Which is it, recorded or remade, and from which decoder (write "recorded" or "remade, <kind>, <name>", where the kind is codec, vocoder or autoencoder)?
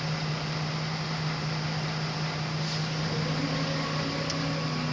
recorded